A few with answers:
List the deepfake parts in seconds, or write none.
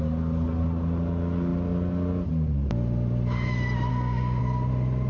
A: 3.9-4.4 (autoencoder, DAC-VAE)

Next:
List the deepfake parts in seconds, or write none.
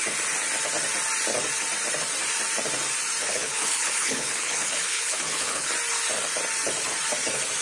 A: 3.2-5.7 (codec, HILCodec)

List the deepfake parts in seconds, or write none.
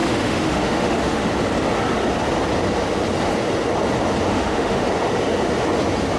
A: 0.0-1.2 (autoencoder, DAC-VAE); 4.3-4.9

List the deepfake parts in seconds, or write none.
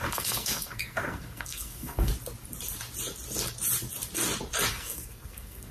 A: 0.0-2.1 (codec, SNAC); 4.7-5.7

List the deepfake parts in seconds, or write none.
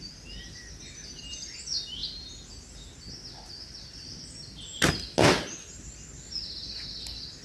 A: none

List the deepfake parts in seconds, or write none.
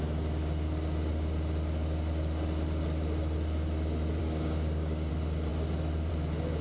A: 4.2-5.1 (codec, DAC)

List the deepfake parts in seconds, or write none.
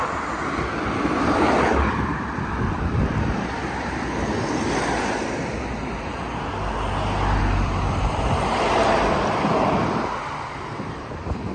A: 0.0-3.6 (vocoder, BigVGAN v2); 7.4-11.5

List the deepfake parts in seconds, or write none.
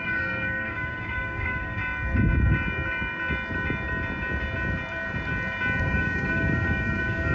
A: 0.0-1.8 (codec, DAC); 5.8-7.3